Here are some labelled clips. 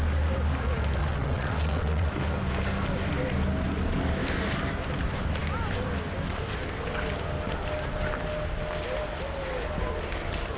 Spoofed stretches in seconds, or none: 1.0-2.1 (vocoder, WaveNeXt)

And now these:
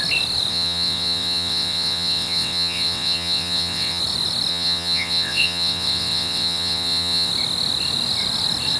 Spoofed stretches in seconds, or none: 0.5-4.0 (vocoder, WaveNeXt); 4.5-7.3

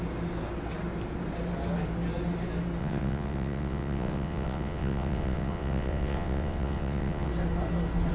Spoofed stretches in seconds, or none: 2.8-7.3 (vocoder, WaveNeXt)

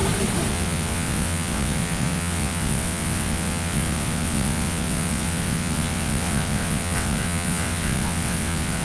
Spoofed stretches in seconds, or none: 0.5-8.8 (vocoder, WaveNeXt)

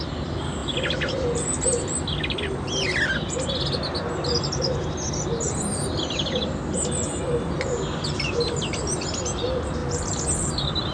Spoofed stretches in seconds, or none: none

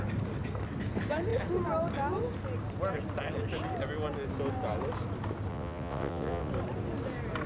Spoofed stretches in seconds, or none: 5.5-6.5 (vocoder, WaveNeXt)

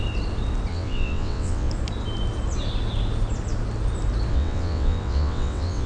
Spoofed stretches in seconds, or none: 0.7-1.7 (vocoder, WaveNeXt); 4.3-5.9